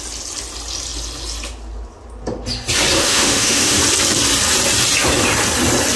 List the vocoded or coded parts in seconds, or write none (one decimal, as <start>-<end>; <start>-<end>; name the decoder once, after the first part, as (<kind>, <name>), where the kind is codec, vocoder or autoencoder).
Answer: 3.0-3.8 (autoencoder, DAC-VAE)